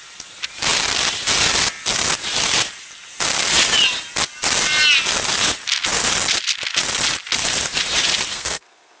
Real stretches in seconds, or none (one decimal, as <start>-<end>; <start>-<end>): 0.0-8.3